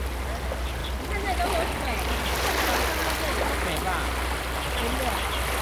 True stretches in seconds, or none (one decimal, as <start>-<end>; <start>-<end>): 0.0-5.6